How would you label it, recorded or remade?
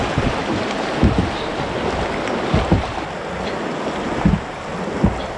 recorded